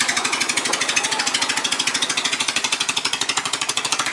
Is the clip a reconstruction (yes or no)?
yes